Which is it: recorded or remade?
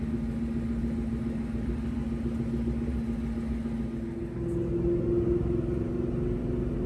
recorded